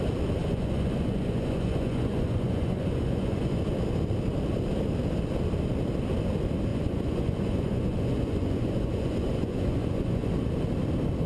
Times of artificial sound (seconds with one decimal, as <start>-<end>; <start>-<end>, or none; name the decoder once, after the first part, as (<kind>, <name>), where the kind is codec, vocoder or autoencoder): 0.4-3.6 (vocoder, Vocos); 6.7-10.3